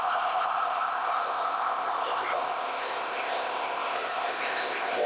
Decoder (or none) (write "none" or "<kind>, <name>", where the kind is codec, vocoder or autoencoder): codec, ZipCodec